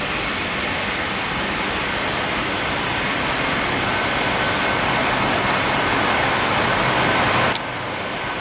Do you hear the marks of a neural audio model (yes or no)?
no